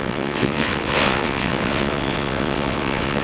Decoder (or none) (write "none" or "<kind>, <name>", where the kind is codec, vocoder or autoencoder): vocoder, WaveNeXt